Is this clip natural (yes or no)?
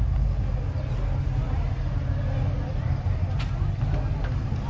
yes